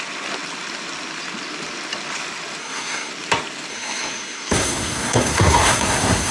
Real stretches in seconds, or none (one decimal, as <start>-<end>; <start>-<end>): 0.0-2.6; 3.1-3.7